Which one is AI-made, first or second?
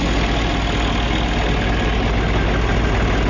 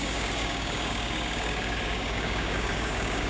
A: second